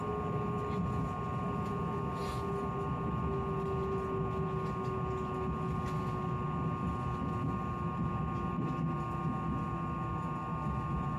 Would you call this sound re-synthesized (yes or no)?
no